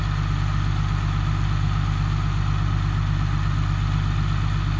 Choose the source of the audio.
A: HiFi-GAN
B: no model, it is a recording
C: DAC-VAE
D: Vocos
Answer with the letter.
B